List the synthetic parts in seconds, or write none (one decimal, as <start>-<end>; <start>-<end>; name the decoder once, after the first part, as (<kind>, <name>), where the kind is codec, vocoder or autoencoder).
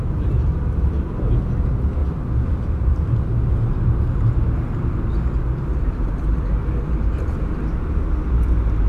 2.0-5.0 (vocoder, BigVGAN v2); 5.7-6.6